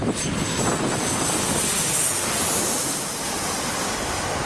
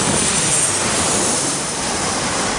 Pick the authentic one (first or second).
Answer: first